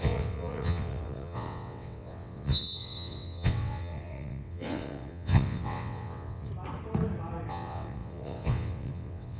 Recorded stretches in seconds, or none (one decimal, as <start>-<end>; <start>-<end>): 6.5-7.5